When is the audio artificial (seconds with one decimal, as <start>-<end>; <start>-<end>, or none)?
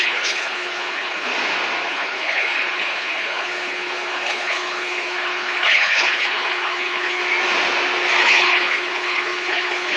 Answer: 0.0-1.3; 1.9-7.2; 8.2-10.0